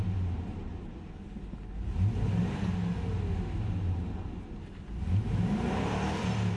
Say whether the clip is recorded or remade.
recorded